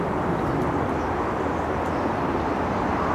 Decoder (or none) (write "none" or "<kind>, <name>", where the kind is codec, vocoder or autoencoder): none